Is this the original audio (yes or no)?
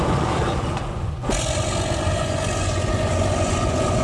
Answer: no